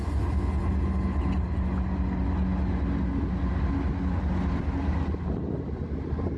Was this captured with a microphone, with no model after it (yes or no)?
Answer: yes